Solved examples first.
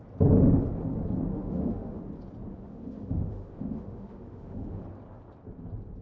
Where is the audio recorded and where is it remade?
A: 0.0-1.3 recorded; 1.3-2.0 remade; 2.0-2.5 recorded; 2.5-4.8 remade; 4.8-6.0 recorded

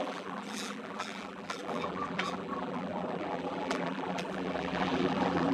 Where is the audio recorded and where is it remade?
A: 0.0-5.5 remade

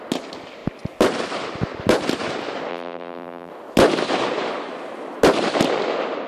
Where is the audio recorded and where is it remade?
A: 0.0-2.7 recorded; 2.7-3.5 remade; 3.5-6.3 recorded

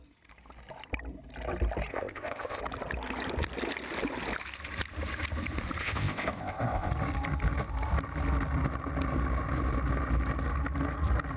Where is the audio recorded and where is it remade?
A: 0.0-1.9 recorded; 1.9-2.6 remade; 2.6-5.8 recorded; 5.8-6.9 remade; 6.9-11.4 recorded

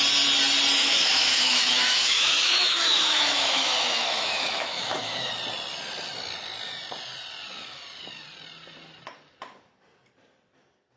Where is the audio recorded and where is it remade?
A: 0.0-0.8 recorded; 0.8-5.3 remade; 5.3-11.0 recorded

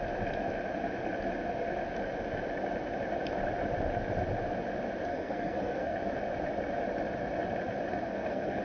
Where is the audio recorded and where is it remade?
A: 0.0-5.1 recorded; 5.1-6.0 remade; 6.0-7.9 recorded; 7.9-8.6 remade

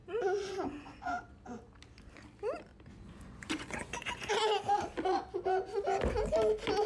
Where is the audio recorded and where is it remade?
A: 0.0-1.2 remade; 1.2-2.9 recorded; 2.9-4.3 remade; 4.3-6.9 recorded